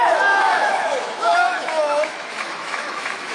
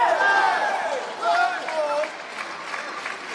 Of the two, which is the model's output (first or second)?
first